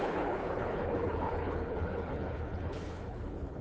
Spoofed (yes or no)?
yes